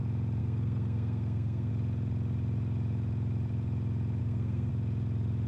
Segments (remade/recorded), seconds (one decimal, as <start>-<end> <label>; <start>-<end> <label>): 0.0-0.4 recorded; 0.4-1.7 remade; 1.7-4.2 recorded; 4.2-4.7 remade; 4.7-5.5 recorded